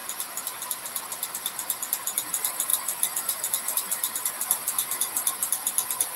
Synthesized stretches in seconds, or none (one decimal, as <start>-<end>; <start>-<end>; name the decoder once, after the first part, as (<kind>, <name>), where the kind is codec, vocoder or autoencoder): none